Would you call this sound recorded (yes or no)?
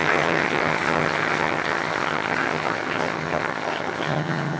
no